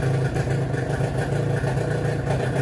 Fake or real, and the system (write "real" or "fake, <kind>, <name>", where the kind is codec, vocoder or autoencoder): real